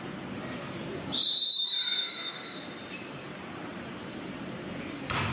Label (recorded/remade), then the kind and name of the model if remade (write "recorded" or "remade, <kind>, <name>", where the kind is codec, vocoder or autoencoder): remade, vocoder, BigVGAN v2